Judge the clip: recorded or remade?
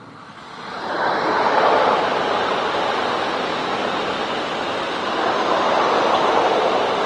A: recorded